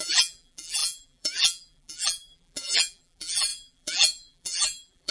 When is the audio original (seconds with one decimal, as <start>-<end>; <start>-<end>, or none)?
none